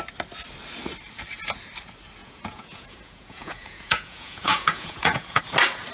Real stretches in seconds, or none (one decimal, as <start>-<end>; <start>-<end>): 0.0-2.2; 5.4-5.9